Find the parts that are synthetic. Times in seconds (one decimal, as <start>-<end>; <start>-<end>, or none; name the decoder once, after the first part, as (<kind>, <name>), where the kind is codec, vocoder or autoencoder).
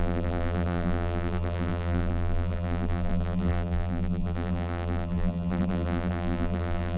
0.0-7.0 (vocoder, BigVGAN v2)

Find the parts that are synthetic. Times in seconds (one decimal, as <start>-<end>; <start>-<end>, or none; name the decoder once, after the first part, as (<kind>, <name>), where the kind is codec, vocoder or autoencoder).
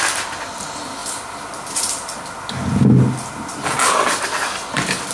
none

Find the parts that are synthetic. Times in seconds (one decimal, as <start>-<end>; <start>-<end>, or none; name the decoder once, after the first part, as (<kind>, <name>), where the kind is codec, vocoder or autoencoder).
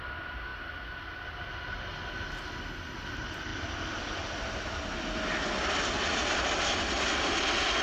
3.5-4.3 (vocoder, BigVGAN v2)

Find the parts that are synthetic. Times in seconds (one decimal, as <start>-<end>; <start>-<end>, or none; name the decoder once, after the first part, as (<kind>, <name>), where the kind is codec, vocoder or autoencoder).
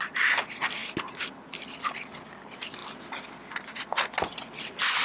none